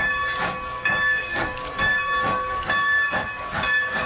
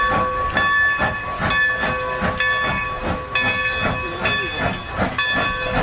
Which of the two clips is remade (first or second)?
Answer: first